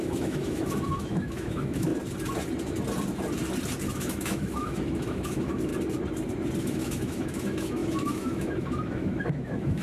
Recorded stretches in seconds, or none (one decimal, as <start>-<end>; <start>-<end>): 1.9-3.9; 5.7-6.6